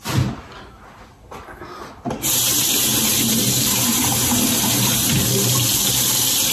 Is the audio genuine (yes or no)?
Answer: yes